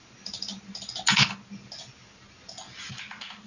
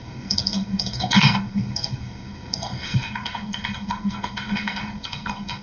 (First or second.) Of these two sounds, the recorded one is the first